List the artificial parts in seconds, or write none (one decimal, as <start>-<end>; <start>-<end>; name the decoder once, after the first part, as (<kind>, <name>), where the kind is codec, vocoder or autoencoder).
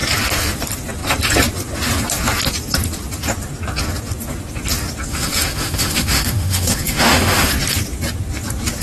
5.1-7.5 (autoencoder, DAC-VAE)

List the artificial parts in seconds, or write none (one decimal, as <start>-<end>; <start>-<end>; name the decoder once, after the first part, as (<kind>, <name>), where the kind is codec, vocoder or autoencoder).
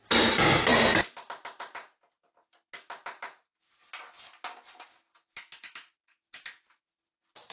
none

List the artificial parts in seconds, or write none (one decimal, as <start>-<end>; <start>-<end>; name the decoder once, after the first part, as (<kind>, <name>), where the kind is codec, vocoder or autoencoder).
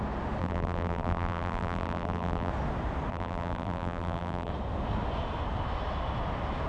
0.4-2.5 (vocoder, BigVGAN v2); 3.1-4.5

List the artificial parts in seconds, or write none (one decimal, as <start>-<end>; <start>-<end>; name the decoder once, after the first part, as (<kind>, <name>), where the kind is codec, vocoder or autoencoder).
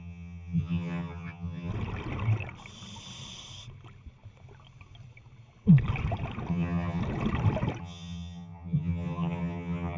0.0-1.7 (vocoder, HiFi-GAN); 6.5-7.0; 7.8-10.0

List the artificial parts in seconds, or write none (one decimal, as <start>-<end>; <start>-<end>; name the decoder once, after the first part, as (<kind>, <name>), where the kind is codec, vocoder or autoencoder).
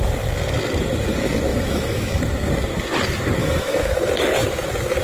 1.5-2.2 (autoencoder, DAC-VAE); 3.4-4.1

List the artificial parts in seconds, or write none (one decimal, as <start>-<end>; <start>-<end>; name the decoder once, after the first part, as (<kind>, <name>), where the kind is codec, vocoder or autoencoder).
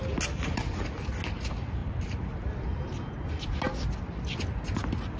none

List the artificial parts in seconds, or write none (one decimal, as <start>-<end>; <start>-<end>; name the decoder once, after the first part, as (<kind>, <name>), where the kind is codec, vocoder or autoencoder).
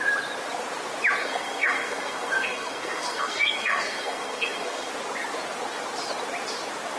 1.2-4.9 (codec, SNAC)